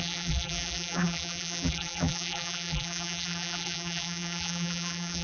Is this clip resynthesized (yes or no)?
yes